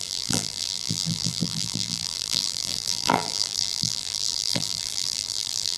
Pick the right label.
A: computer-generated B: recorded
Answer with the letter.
A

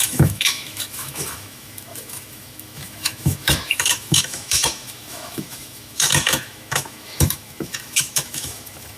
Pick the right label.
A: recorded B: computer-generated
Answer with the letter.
B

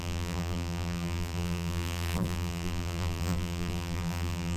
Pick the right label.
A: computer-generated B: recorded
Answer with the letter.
A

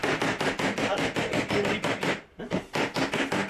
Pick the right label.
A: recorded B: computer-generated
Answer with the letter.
A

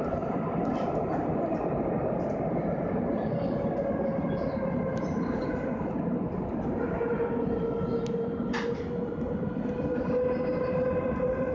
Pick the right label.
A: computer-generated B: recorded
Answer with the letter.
B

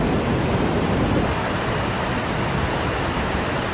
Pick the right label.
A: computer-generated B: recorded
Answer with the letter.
B